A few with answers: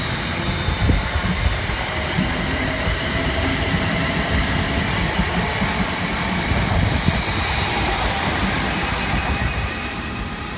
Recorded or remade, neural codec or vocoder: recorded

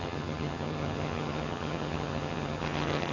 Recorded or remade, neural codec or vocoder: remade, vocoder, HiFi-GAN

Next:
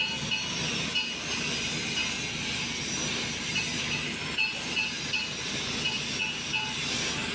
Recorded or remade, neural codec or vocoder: recorded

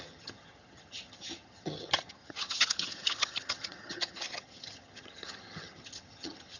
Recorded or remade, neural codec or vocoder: remade, vocoder, HiFi-GAN